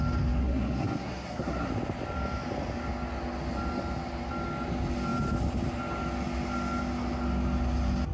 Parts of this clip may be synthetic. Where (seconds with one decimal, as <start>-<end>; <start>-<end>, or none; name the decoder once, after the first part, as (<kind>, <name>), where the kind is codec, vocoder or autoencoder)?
0.4-1.7 (codec, SNAC)